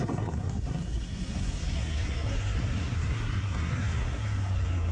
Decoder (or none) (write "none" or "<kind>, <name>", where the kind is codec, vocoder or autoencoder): codec, SNAC